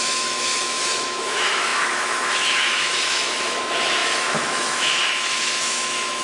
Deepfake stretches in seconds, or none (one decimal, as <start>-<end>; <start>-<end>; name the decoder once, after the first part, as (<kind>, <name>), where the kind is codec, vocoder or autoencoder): 0.0-6.2 (autoencoder, DAC-VAE)